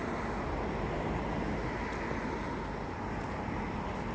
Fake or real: real